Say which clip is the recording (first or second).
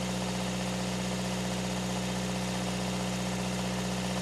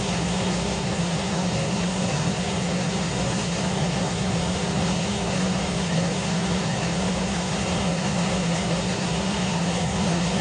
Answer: first